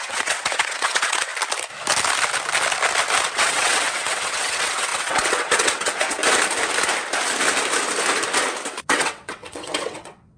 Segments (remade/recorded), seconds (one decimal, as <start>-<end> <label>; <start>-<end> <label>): 0.0-1.3 remade; 1.3-3.3 recorded; 3.3-6.2 remade; 6.2-8.7 recorded; 8.7-10.4 remade